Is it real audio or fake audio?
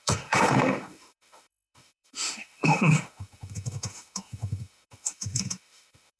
fake